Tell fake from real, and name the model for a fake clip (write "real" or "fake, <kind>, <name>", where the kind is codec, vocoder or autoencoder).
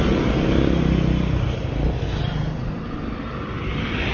real